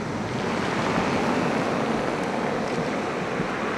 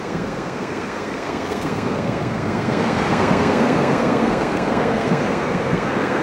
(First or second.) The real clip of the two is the first